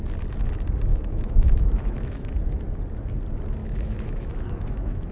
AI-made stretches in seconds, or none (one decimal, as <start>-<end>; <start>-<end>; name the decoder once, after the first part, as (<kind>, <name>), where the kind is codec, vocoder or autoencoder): 0.9-2.3 (autoencoder, DAC-VAE); 3.6-5.1